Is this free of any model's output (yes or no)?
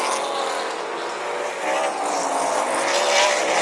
yes